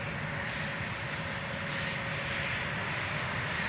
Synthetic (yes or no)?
no